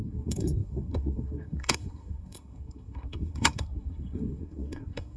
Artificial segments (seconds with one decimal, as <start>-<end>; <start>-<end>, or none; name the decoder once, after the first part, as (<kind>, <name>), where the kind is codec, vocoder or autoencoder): 0.0-5.2 (codec, SNAC)